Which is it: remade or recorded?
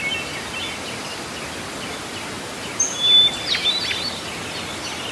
recorded